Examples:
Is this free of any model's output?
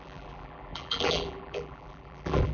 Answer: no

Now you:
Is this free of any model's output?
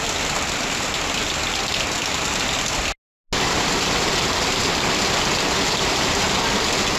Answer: yes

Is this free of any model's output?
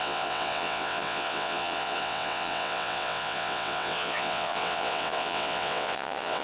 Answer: no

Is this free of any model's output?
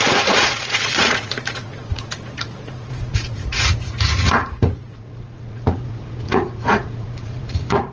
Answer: no